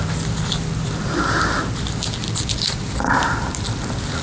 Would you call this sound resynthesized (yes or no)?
no